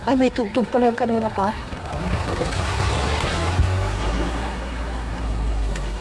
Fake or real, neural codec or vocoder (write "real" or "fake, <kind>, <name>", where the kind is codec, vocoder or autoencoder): fake, codec, SNAC